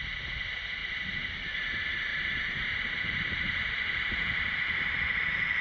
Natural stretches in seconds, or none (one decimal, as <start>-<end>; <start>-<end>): 0.0-0.8; 1.5-2.1